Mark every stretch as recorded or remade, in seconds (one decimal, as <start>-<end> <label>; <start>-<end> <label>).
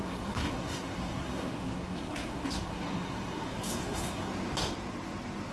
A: 0.0-4.3 remade; 4.3-5.5 recorded